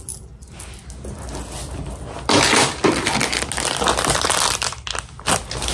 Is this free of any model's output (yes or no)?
yes